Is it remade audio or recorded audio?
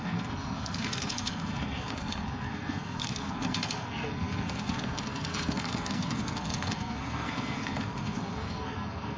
remade